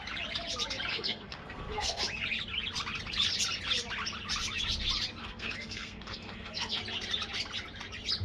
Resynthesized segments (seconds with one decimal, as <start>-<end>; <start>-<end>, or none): 0.9-2.0; 5.2-6.8